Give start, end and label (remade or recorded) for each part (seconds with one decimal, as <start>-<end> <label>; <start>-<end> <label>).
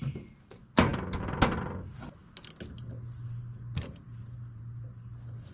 0.0-5.5 recorded